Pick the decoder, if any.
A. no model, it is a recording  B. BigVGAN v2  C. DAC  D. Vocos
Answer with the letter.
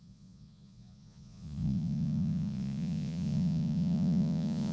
D